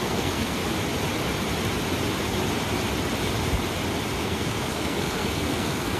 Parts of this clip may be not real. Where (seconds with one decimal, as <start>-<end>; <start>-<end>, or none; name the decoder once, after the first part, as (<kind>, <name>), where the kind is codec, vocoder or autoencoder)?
0.0-0.6 (codec, SNAC); 4.2-6.0